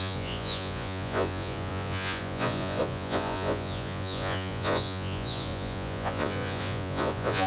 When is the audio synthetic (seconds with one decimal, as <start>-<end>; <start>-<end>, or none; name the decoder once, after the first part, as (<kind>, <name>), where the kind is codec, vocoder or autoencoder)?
0.0-7.5 (vocoder, Vocos)